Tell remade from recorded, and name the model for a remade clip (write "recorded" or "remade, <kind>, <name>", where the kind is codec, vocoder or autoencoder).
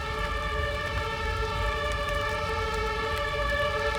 recorded